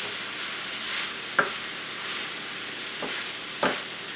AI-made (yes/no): no